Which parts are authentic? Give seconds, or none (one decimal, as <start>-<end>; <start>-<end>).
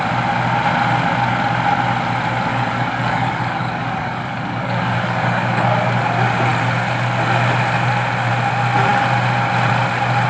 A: 0.0-2.5; 5.8-10.3